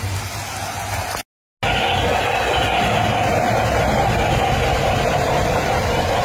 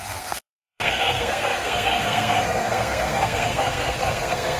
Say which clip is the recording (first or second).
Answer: first